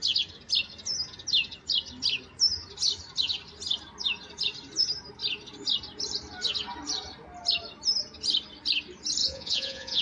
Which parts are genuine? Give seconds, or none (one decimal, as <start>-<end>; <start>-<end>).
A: 0.0-9.2